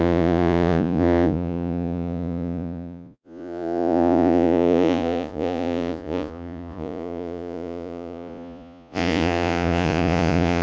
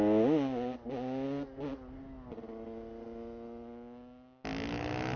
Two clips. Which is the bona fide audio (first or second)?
second